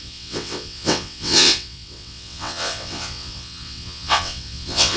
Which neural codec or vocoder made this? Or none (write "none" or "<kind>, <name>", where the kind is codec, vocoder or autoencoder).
vocoder, WaveNeXt